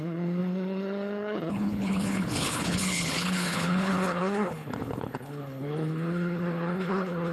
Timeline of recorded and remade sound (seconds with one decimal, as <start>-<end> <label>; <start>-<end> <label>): 0.0-7.3 remade